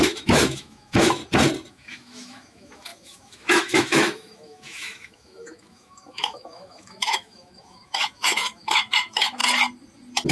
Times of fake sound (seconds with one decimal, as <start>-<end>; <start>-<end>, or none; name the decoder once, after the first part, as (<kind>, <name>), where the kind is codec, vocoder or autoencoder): 0.0-1.2 (autoencoder, DAC-VAE); 1.7-9.4